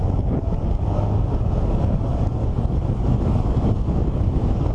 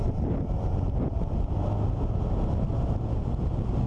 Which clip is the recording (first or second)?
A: second